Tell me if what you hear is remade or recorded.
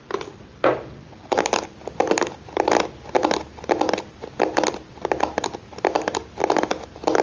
recorded